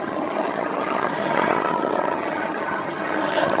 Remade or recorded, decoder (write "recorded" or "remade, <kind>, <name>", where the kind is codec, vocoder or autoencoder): remade, vocoder, HiFi-GAN